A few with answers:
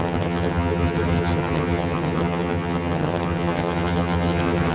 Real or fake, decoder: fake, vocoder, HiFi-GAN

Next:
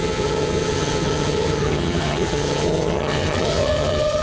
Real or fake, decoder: fake, vocoder, HiFi-GAN